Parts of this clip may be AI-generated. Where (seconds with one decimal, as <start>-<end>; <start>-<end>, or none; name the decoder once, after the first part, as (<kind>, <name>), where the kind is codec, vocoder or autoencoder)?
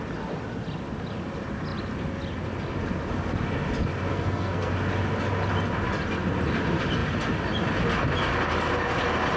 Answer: 4.1-4.7 (codec, SNAC)